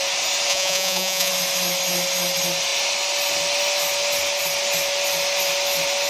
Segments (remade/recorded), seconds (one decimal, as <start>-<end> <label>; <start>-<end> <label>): 0.0-0.5 recorded; 0.5-1.3 remade; 1.3-6.1 recorded